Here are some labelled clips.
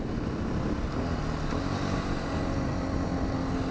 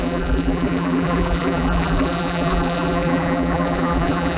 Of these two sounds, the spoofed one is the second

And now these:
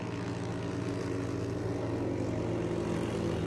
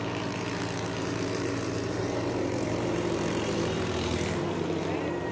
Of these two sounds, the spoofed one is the second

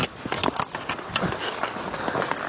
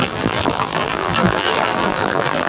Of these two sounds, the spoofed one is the second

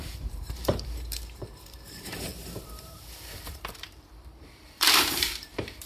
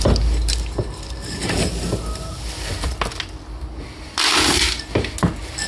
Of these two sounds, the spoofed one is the first